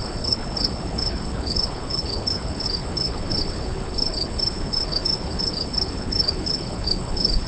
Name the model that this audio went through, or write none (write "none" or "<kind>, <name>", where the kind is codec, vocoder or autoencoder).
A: codec, HILCodec